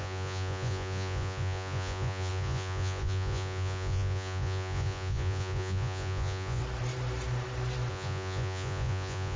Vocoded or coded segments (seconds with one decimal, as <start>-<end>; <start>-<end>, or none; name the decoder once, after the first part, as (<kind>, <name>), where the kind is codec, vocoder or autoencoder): 0.0-6.6 (vocoder, Vocos); 7.9-9.4